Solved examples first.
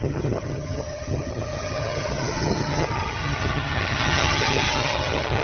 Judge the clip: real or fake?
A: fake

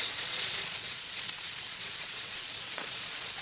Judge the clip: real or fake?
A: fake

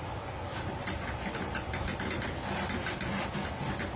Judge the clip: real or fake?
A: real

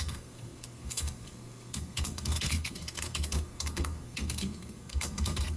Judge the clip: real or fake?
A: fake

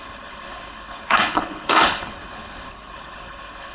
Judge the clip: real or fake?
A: fake